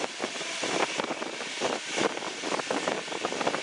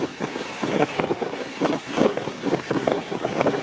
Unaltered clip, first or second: first